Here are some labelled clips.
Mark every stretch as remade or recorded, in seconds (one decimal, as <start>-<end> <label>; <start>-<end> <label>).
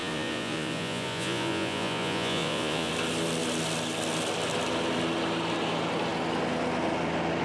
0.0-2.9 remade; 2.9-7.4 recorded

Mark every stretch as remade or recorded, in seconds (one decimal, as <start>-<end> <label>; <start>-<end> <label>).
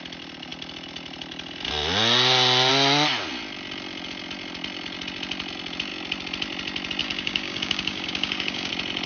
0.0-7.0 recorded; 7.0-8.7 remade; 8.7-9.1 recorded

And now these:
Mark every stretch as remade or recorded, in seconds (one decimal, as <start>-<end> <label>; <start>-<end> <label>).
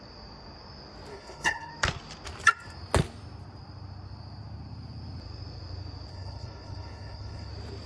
0.0-1.1 recorded; 1.1-1.7 remade; 1.7-6.1 recorded; 6.1-7.5 remade; 7.5-7.9 recorded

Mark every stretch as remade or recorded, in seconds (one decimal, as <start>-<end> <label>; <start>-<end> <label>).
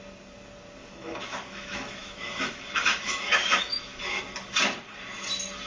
0.0-0.8 recorded; 0.8-4.2 remade; 4.2-5.7 recorded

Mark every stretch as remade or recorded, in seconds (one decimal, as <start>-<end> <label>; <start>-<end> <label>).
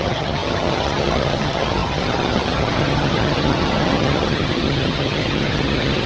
0.0-6.1 remade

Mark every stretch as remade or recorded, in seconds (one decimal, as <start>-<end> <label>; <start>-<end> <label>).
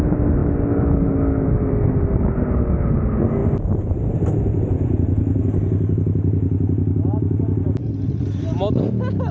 0.0-9.3 recorded